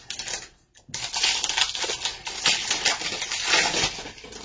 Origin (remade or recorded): recorded